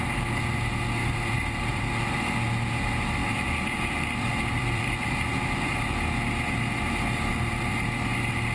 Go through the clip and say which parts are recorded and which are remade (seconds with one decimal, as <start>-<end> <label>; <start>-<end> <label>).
0.0-1.0 recorded; 1.0-1.8 remade; 1.8-3.2 recorded; 3.2-5.8 remade; 5.8-7.3 recorded; 7.3-7.8 remade; 7.8-8.5 recorded